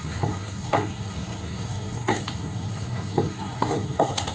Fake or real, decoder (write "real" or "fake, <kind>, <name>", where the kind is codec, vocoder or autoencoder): fake, codec, SNAC